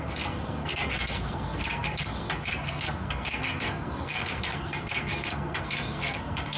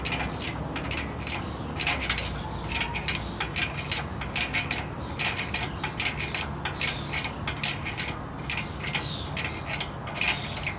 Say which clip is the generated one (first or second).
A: first